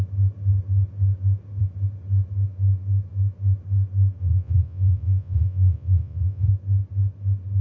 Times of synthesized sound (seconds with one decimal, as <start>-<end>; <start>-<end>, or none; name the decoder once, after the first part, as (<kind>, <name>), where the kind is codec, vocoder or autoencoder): 4.2-6.5 (vocoder, Vocos)